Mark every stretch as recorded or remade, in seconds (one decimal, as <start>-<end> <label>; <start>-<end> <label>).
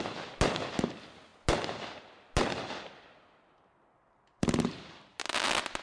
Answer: 0.0-5.8 recorded